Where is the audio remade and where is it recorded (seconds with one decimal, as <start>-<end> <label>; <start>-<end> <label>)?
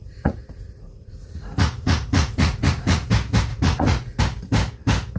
0.0-3.1 remade; 3.1-3.5 recorded; 3.5-4.2 remade; 4.2-5.2 recorded